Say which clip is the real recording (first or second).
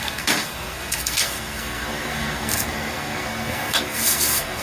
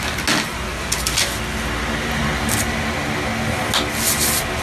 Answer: second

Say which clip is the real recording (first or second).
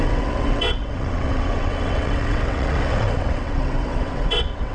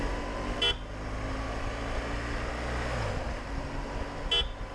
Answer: second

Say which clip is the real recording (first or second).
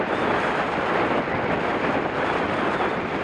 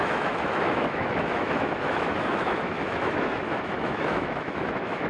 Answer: first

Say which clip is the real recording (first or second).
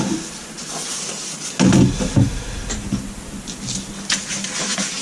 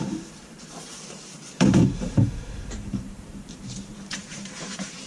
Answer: first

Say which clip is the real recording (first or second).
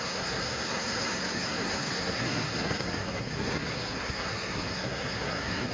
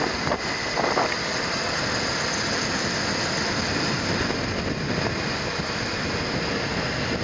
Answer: second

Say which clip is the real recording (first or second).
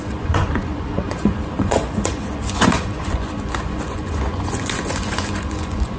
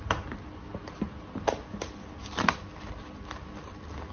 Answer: second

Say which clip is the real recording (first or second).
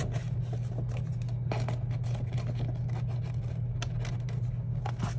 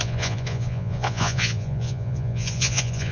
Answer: first